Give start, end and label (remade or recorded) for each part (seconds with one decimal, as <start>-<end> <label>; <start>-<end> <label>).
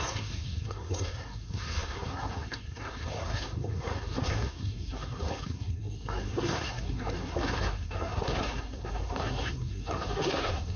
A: 0.0-10.8 remade